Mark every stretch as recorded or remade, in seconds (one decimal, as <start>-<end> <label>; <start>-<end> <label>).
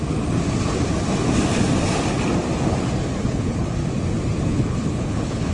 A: 0.0-3.3 recorded; 3.3-3.8 remade; 3.8-4.4 recorded; 4.4-5.5 remade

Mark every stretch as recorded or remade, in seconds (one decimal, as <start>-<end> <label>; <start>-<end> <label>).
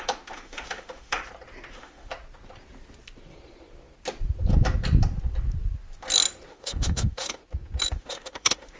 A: 0.0-1.2 remade; 1.2-1.7 recorded; 1.7-2.1 remade; 2.1-6.5 recorded; 6.5-7.4 remade; 7.4-7.9 recorded; 7.9-8.8 remade